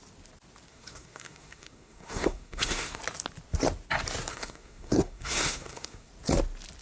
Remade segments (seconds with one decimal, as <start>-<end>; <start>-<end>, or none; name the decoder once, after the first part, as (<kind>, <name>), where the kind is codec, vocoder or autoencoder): 0.7-3.0 (codec, SNAC); 4.3-6.1